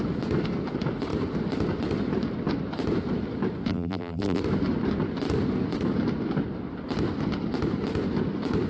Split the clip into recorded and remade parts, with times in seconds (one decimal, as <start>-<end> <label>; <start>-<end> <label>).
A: 0.0-3.7 recorded; 3.7-4.4 remade; 4.4-8.7 recorded